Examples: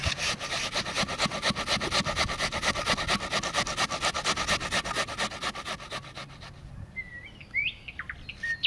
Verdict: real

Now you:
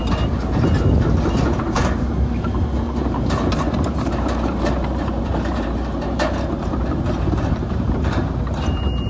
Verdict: fake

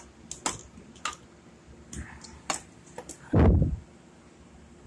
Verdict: real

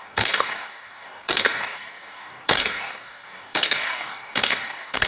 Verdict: fake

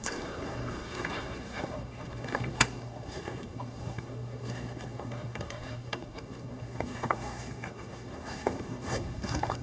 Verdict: fake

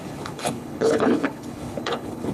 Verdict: fake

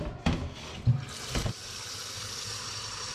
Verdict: real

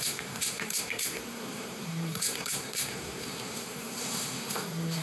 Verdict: fake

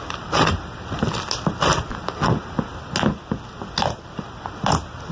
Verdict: real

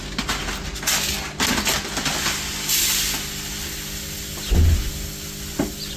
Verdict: real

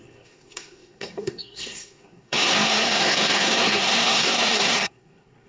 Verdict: fake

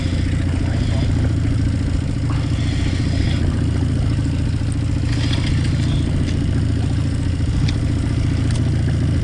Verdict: real